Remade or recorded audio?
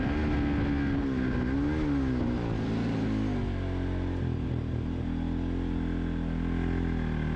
recorded